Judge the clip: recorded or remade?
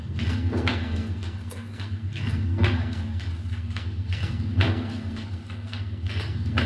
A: remade